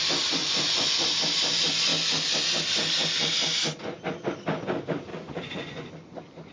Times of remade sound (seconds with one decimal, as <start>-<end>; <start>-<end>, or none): 0.4-0.9; 5.1-5.9